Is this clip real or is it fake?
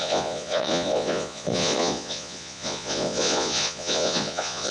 fake